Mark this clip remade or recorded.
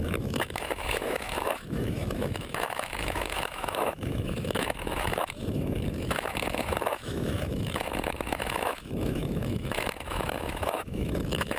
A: remade